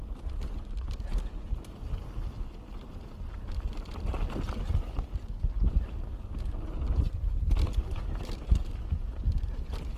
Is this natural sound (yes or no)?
yes